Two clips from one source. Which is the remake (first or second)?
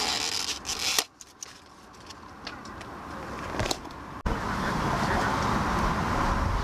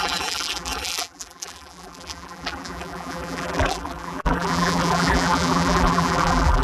second